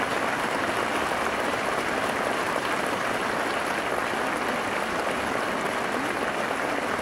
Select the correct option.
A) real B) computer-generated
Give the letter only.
A